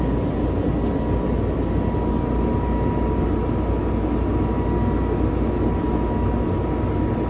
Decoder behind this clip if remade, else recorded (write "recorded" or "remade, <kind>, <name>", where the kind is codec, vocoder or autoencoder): recorded